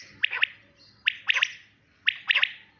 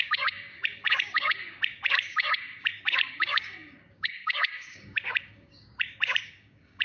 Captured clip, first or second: first